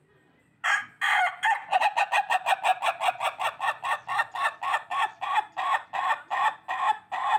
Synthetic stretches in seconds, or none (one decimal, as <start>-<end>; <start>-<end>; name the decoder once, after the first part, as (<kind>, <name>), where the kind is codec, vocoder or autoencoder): none